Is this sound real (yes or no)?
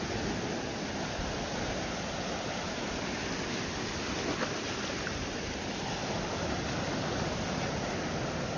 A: yes